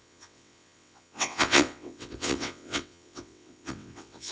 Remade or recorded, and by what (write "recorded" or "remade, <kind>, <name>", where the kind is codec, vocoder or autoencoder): remade, vocoder, WaveNeXt